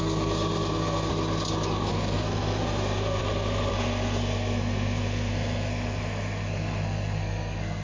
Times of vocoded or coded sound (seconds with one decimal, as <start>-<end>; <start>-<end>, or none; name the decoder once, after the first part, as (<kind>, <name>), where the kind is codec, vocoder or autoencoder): 0.0-1.1 (codec, SNAC); 1.9-3.2; 3.7-7.8